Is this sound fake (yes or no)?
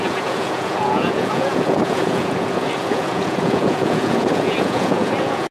yes